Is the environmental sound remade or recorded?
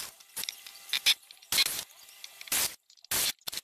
recorded